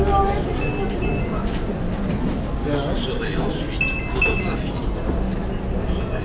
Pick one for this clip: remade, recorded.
recorded